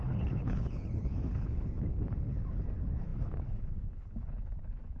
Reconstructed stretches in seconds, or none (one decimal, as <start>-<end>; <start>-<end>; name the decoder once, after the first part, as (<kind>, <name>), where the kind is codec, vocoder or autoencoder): 0.0-5.0 (codec, HILCodec)